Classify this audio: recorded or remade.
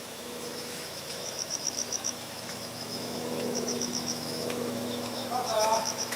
remade